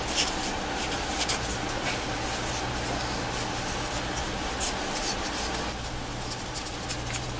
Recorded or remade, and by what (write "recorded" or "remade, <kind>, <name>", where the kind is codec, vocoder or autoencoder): recorded